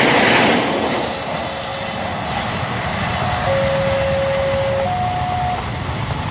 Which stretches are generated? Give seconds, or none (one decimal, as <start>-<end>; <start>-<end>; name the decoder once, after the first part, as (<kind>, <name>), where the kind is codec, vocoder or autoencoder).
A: none